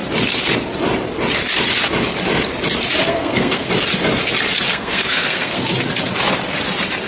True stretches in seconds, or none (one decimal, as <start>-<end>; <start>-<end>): 0.0-3.0; 3.7-4.7; 5.6-7.1

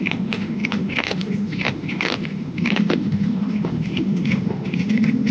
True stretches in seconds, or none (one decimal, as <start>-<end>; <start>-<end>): none

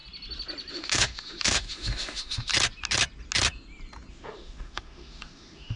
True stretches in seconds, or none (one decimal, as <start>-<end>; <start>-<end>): 0.0-0.7; 2.5-4.1